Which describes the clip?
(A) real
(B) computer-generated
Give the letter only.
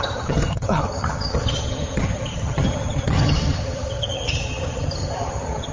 B